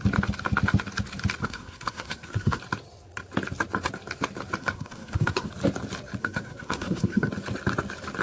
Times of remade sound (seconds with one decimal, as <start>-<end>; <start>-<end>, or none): 1.4-2.6; 4.6-5.5; 6.2-7.3